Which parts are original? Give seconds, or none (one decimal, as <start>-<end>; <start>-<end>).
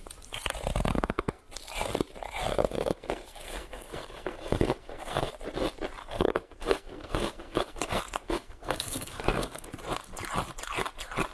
0.0-0.9; 1.4-2.5; 5.3-6.0; 9.7-11.3